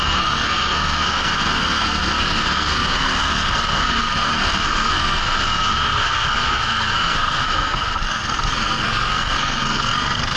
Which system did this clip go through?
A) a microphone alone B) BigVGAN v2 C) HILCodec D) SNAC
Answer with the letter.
D